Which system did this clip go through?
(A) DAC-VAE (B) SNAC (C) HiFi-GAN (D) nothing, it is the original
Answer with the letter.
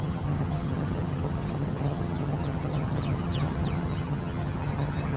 C